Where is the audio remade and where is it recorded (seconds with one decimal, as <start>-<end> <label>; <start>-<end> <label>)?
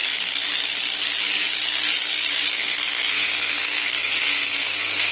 0.0-2.5 recorded; 2.5-5.1 remade